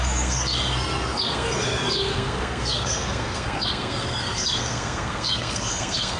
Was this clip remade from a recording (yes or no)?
yes